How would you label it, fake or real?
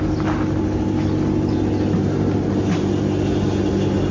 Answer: real